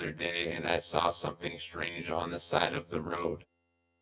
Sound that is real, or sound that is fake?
fake